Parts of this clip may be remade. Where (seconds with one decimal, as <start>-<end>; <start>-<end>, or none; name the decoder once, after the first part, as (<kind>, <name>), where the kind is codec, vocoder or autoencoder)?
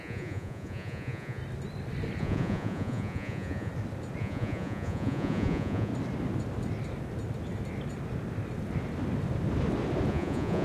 0.0-1.4 (vocoder, Vocos); 2.2-3.7; 4.2-5.9; 10.1-10.6